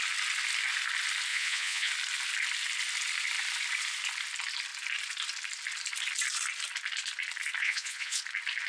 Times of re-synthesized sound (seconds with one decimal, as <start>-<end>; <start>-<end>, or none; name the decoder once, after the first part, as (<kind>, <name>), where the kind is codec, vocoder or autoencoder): 1.3-1.9 (vocoder, Vocos); 7.6-8.2